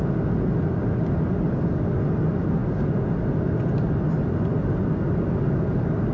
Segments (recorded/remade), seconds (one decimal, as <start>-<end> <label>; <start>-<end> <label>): 0.0-6.1 recorded